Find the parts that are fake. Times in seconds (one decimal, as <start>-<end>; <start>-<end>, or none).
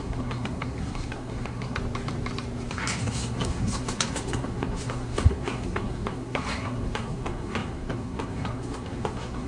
0.0-1.8; 2.7-9.5